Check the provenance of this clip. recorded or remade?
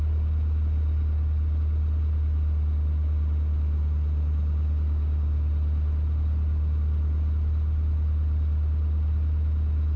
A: recorded